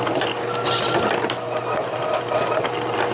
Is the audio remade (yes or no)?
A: no